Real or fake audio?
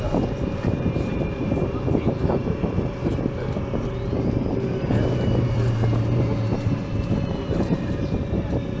fake